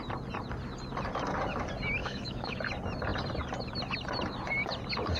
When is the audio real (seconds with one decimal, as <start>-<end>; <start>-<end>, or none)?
0.0-2.0; 2.6-5.2